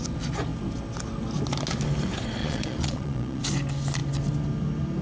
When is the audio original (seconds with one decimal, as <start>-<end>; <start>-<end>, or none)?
0.0-2.4; 3.4-5.0

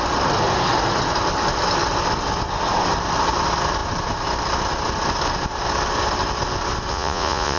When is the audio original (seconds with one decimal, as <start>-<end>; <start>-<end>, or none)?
0.0-6.9

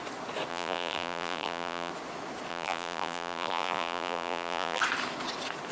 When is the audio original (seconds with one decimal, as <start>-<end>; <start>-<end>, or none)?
0.0-0.5; 1.9-2.5; 4.8-5.7

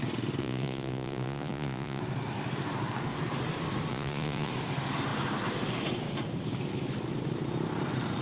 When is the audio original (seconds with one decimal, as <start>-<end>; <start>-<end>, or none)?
0.0-0.4; 2.0-3.9; 4.5-8.2

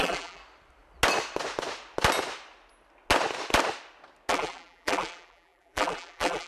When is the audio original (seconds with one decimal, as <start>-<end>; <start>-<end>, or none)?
0.4-4.3

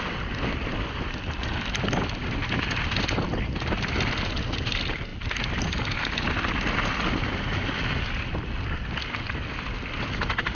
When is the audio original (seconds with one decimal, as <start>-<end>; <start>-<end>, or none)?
0.0-10.5